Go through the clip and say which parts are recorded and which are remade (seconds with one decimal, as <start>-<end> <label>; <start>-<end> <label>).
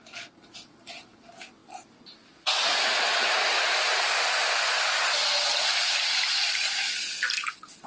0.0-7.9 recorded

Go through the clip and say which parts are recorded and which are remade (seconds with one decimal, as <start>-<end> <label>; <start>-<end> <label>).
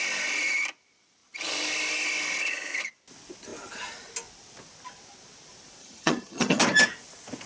0.0-5.8 recorded; 5.8-6.6 remade; 6.6-7.5 recorded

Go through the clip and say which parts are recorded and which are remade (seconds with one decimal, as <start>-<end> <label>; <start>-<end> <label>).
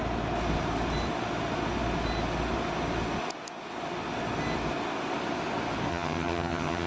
0.0-5.9 recorded; 5.9-6.9 remade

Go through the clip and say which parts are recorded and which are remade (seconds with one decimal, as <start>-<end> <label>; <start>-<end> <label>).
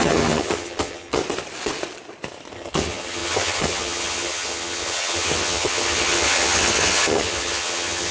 0.0-1.2 remade; 1.2-2.5 recorded; 2.5-8.1 remade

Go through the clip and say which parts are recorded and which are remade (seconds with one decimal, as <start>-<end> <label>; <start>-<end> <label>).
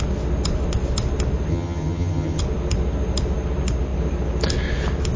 0.0-1.5 recorded; 1.5-2.4 remade; 2.4-5.2 recorded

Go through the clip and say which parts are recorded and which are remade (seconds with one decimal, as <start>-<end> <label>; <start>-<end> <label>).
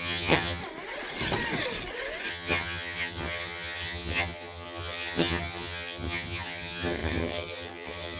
0.0-0.6 remade; 0.6-2.3 recorded; 2.3-8.2 remade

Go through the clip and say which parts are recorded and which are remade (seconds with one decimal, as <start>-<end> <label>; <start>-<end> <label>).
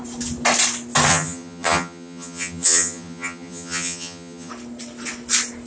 0.0-1.1 recorded; 1.1-4.5 remade; 4.5-5.7 recorded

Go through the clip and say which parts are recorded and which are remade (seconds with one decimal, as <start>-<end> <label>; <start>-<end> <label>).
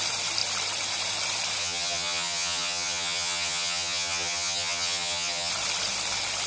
0.0-1.6 recorded; 1.6-5.5 remade; 5.5-6.5 recorded